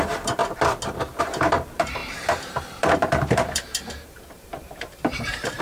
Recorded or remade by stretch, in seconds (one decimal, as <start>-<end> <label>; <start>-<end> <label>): 0.0-0.4 remade; 0.4-1.2 recorded; 1.2-5.6 remade